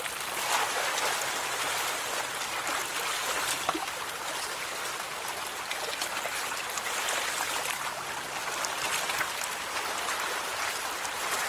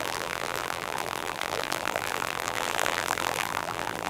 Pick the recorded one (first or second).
first